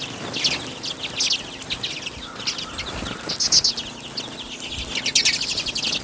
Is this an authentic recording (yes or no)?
yes